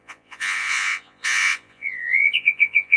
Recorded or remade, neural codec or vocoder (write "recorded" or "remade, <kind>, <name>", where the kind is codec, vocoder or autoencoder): remade, vocoder, Vocos